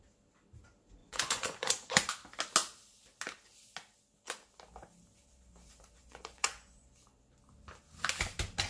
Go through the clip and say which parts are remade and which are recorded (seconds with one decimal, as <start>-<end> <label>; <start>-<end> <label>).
0.0-1.0 recorded; 1.0-2.1 remade; 2.1-6.0 recorded; 6.0-6.9 remade; 6.9-8.7 recorded